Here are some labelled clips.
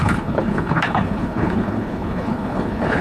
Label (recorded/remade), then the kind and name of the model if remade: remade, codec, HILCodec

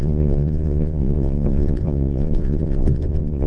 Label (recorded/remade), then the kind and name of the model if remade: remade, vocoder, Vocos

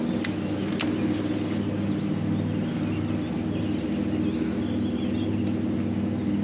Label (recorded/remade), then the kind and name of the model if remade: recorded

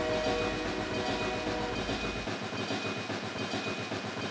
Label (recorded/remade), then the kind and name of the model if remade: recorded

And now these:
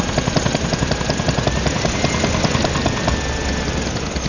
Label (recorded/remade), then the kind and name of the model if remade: recorded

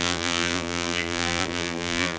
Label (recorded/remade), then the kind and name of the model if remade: remade, vocoder, BigVGAN v2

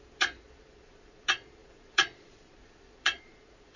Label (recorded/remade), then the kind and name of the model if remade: remade, vocoder, Vocos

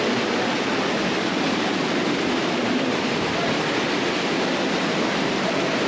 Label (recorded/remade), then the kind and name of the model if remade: recorded